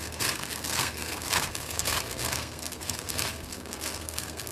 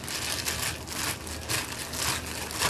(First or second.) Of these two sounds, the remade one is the first